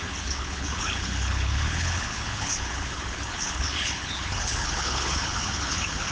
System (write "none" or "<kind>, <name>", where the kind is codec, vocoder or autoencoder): codec, HILCodec